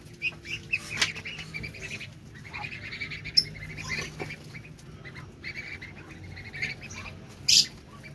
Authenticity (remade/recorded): recorded